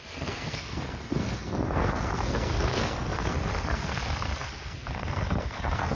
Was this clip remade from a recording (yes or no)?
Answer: yes